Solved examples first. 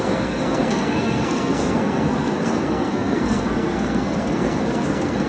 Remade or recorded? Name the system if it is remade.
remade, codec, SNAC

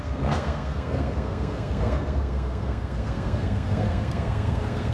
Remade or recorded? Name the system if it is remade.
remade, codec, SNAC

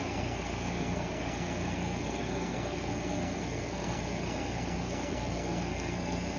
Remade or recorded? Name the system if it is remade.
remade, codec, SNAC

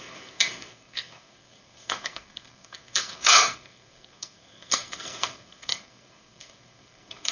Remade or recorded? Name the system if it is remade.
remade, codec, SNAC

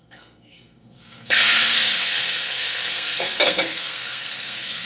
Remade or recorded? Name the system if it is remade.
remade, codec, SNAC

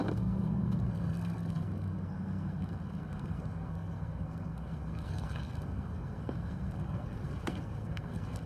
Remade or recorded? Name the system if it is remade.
remade, codec, SNAC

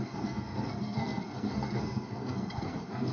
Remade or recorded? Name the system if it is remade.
remade, codec, SNAC